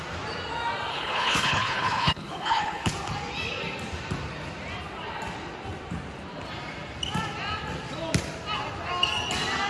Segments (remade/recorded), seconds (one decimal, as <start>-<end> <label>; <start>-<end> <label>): 0.0-0.9 recorded; 0.9-2.9 remade; 2.9-9.7 recorded